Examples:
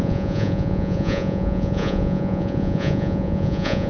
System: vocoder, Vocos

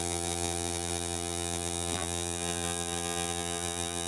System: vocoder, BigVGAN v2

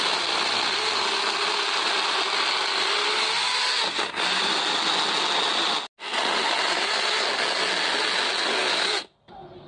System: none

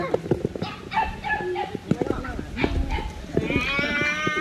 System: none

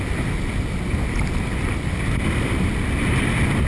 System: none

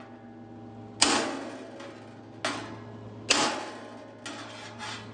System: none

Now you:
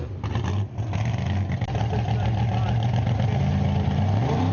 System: none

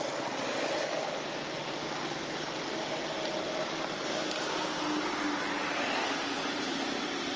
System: none